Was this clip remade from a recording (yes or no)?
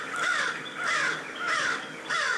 yes